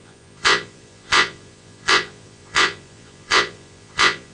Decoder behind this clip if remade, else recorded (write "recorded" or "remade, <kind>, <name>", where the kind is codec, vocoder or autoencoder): remade, vocoder, Vocos